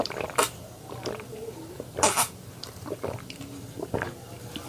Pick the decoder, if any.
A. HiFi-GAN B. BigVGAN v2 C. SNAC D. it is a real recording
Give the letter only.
B